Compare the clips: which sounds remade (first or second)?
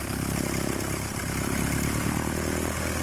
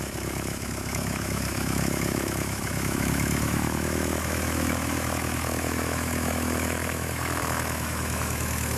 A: second